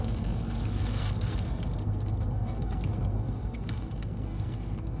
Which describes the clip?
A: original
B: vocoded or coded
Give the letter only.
B